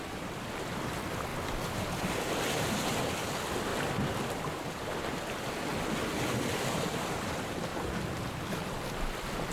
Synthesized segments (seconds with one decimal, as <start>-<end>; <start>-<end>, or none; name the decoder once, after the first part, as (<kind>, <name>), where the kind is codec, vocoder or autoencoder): none